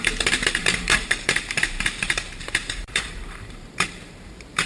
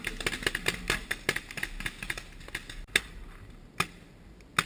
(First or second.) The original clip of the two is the second